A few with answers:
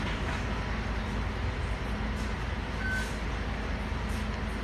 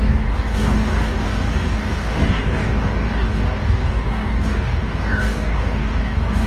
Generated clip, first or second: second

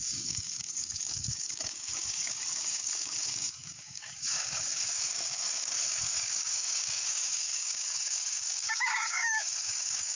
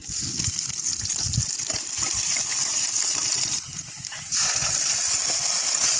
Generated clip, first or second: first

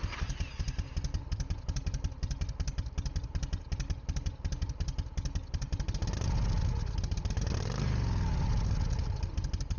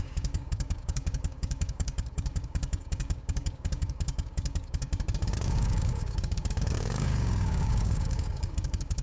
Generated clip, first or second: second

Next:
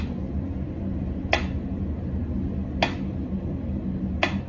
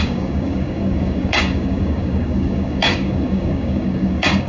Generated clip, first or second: second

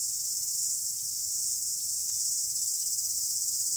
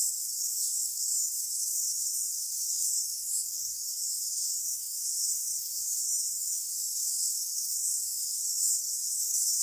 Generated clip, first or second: second